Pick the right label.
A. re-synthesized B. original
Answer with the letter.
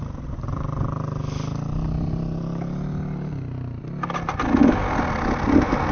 B